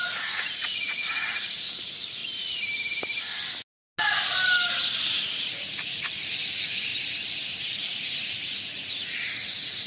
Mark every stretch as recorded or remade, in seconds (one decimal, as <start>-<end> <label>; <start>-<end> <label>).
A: 0.0-2.2 remade; 2.2-5.0 recorded; 5.0-6.9 remade; 6.9-7.6 recorded; 7.6-9.9 remade